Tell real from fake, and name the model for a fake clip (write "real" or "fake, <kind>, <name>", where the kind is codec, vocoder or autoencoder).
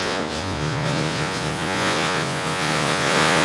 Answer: fake, vocoder, Vocos